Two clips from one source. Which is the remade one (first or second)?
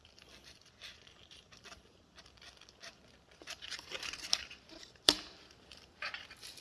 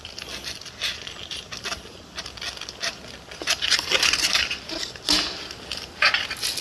first